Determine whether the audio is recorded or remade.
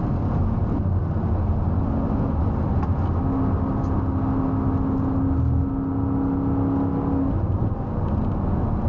recorded